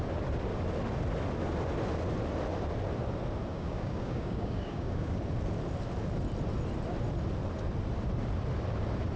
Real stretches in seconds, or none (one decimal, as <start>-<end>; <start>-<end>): 0.0-3.5; 5.2-9.2